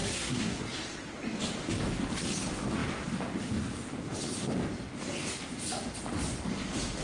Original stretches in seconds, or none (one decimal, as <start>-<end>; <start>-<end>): 0.6-7.0